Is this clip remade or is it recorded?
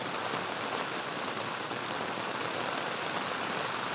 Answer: recorded